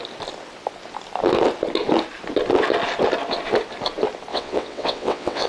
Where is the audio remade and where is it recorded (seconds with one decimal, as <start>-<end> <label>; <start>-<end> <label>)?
0.0-4.3 recorded; 4.3-5.5 remade